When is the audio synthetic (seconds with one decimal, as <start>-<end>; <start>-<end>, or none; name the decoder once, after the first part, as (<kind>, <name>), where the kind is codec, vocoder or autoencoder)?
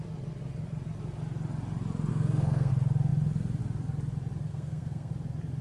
2.1-2.7 (codec, SNAC); 4.5-5.1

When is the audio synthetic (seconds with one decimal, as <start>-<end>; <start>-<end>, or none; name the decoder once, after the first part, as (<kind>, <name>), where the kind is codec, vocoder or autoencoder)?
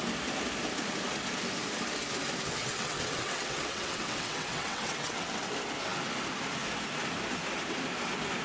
2.6-5.4 (vocoder, WaveNeXt)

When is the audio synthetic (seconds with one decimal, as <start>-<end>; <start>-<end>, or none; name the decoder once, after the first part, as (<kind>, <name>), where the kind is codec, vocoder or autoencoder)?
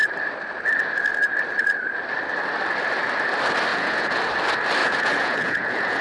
3.7-4.2 (vocoder, Vocos); 4.8-6.0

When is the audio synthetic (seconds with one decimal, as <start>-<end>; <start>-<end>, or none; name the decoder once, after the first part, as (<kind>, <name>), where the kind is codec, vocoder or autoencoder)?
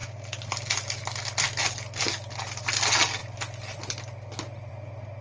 none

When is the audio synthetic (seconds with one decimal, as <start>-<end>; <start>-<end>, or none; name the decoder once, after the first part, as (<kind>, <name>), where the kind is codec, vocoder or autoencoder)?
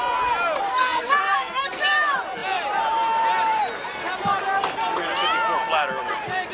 0.7-1.8 (codec, SNAC)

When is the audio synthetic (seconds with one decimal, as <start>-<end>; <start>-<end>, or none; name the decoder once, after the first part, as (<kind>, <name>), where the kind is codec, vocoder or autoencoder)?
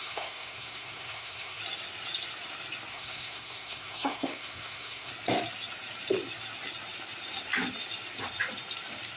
0.0-1.6 (codec, SNAC); 2.9-5.1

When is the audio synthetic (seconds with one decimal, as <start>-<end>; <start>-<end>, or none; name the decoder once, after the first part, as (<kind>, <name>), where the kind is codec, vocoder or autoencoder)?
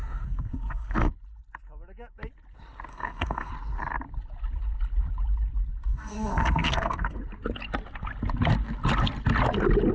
0.0-1.1 (codec, SNAC); 2.9-3.5; 5.9-7.2